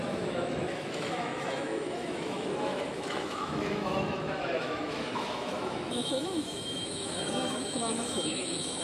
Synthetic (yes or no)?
yes